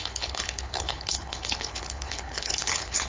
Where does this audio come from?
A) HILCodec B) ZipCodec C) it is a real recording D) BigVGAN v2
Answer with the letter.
A